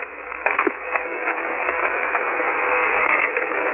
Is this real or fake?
fake